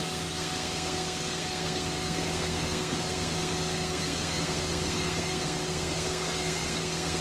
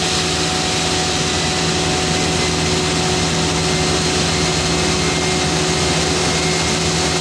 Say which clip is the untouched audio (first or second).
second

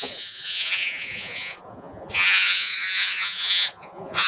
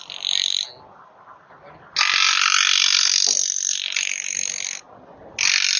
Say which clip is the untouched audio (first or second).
second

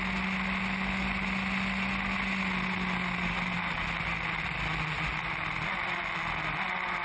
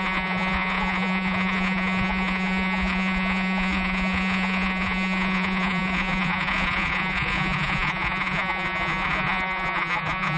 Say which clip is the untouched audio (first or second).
first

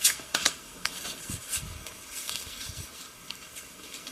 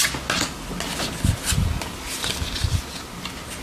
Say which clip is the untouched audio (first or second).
second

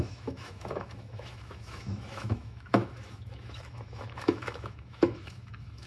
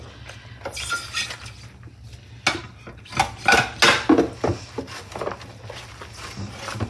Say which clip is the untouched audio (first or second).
second